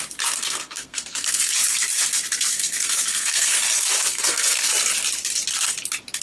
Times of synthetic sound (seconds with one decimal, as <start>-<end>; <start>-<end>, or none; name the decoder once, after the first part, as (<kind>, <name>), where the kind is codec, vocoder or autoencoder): 0.4-1.5 (codec, SNAC); 2.5-3.6; 4.1-4.7